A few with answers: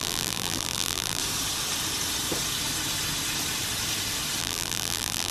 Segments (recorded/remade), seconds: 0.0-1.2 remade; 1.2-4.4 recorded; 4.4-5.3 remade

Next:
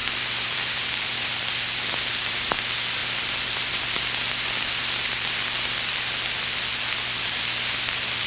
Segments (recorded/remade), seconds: 0.0-2.6 remade; 2.6-8.3 recorded

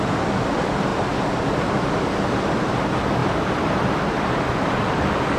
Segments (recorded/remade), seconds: 0.0-3.2 recorded; 3.2-5.0 remade; 5.0-5.4 recorded